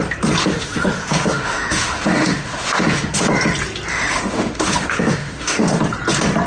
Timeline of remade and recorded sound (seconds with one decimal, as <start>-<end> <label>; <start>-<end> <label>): 0.0-0.4 recorded; 0.4-3.2 remade; 3.2-3.9 recorded; 3.9-5.8 remade; 5.8-6.5 recorded